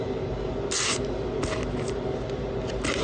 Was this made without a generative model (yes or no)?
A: yes